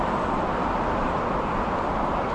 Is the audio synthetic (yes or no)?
no